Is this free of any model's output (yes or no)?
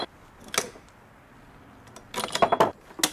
yes